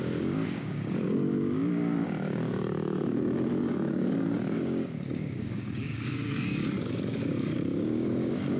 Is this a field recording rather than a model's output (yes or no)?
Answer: no